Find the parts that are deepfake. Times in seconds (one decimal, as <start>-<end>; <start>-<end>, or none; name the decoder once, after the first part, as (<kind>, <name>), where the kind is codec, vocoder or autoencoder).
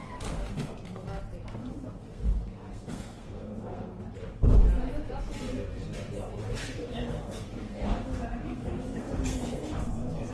0.0-1.2 (codec, SNAC); 1.6-4.0; 6.6-10.3